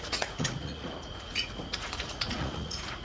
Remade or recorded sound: remade